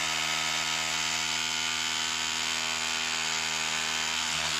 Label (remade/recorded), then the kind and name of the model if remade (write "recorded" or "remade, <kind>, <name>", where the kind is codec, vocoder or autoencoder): recorded